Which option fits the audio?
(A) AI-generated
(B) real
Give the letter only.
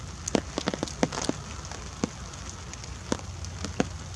B